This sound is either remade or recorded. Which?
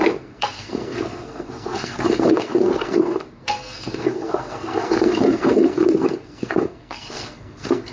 remade